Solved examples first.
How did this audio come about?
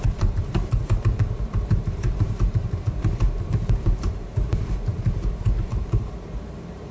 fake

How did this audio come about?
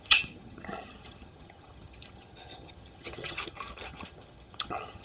fake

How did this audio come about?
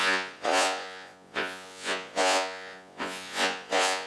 fake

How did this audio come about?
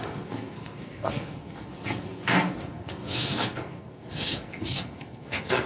fake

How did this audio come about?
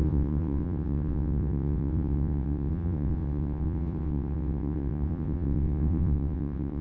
fake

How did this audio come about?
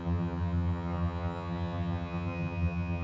fake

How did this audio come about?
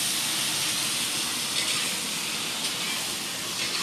real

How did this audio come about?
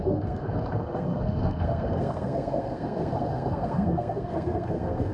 fake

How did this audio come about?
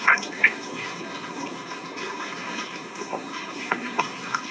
fake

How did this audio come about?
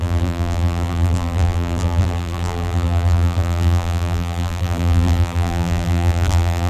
fake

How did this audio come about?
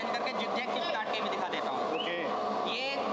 real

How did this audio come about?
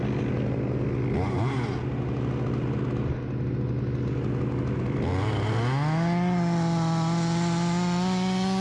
real